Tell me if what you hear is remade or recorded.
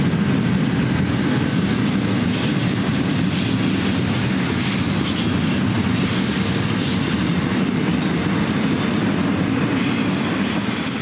recorded